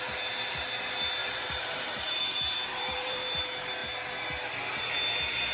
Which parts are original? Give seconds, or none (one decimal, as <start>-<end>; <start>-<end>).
0.0-1.2; 2.2-2.7; 3.4-5.5